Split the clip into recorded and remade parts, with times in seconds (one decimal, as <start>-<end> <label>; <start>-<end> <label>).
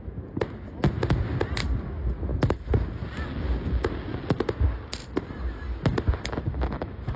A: 0.0-6.5 recorded; 6.5-7.2 remade